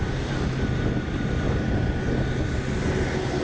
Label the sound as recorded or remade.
recorded